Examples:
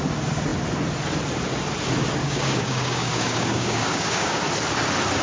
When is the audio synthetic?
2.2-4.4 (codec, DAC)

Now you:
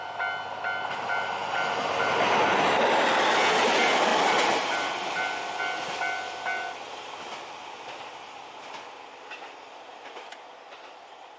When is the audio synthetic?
none

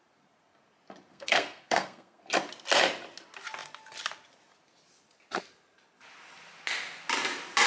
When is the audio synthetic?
1.1-2.2 (codec, SNAC)

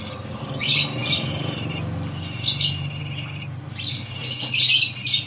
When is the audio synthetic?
none

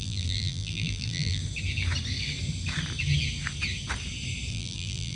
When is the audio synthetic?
0.0-1.4 (vocoder, BigVGAN v2); 4.5-5.2

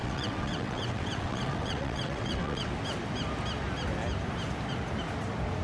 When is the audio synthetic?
0.0-2.7 (vocoder, WaveNeXt)

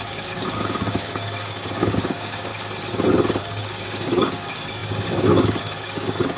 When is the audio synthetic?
0.0-2.5 (codec, DAC); 3.4-6.4

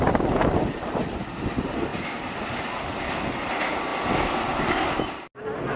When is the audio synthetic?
none